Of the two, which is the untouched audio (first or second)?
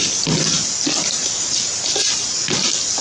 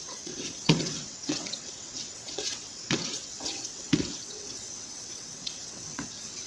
first